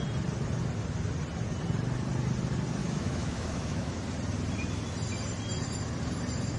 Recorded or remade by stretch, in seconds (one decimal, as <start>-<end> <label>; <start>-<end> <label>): 0.0-2.8 recorded; 2.8-3.9 remade; 3.9-6.6 recorded

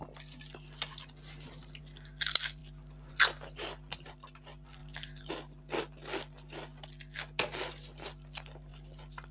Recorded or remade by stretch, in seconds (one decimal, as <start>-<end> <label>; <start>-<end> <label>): 0.0-9.3 recorded

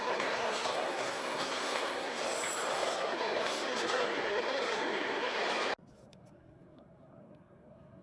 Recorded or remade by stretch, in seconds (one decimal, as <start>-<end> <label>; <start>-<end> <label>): 0.0-2.2 remade; 2.2-2.7 recorded; 2.7-5.4 remade; 5.4-5.9 recorded; 5.9-8.0 remade

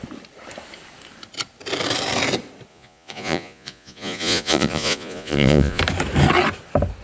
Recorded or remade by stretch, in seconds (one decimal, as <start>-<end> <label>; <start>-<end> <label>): 0.0-2.7 recorded; 2.7-5.8 remade; 5.8-7.0 recorded

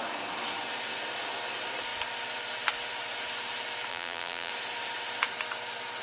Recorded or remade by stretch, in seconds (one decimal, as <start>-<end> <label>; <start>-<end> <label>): 0.0-3.9 recorded; 3.9-4.5 remade; 4.5-6.0 recorded

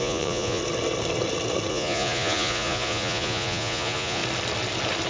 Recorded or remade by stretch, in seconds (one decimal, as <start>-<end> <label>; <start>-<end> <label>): 0.0-0.6 remade; 0.6-1.7 recorded; 1.7-4.2 remade; 4.2-5.1 recorded